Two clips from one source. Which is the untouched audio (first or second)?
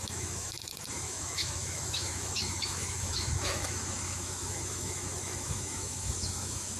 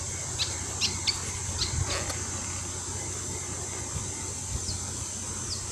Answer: second